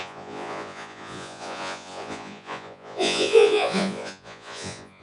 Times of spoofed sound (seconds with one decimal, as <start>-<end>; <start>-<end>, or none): 0.0-5.0